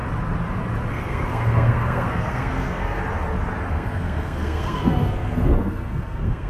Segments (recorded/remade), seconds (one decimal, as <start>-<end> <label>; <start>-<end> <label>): 0.0-0.9 recorded; 0.9-3.0 remade; 3.0-3.7 recorded; 3.7-6.5 remade